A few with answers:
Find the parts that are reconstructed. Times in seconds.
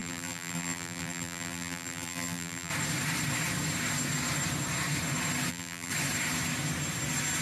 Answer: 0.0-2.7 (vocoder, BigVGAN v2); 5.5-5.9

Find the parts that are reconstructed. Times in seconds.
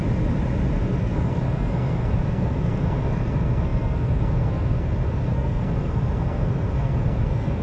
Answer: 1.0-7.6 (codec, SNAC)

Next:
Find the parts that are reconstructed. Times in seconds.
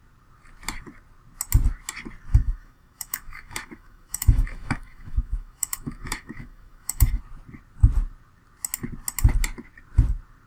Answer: 2.3-7.2 (autoencoder, DAC-VAE)